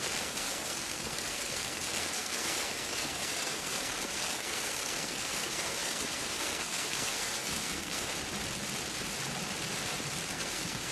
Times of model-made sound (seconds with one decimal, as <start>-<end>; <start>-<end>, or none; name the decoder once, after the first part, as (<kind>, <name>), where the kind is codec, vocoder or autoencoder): 0.0-8.1 (codec, SNAC); 10.3-10.9